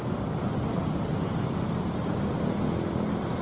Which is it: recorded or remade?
recorded